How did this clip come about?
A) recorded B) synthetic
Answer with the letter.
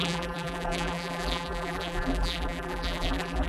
B